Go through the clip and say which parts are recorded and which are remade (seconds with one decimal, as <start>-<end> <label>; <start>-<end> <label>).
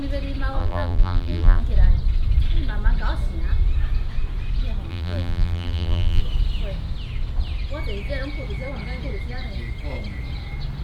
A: 0.0-0.6 recorded; 0.6-1.6 remade; 1.6-4.9 recorded; 4.9-6.2 remade; 6.2-10.8 recorded